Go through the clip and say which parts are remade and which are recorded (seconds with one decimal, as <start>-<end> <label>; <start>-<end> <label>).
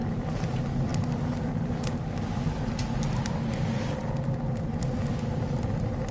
0.0-0.9 remade; 0.9-4.6 recorded; 4.6-6.1 remade